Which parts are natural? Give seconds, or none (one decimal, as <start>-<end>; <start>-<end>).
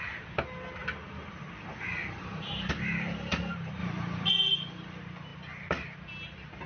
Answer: 0.0-0.8; 2.7-3.8; 4.3-6.7